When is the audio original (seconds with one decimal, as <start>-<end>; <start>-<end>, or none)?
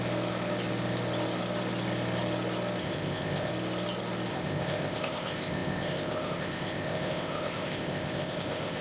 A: 0.0-2.8; 3.5-4.3